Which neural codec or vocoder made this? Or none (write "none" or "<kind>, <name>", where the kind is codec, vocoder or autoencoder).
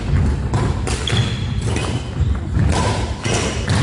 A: none